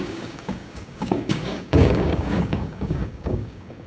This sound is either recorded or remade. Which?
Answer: remade